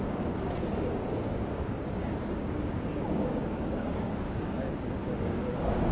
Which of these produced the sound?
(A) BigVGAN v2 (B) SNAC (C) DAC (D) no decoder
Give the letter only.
C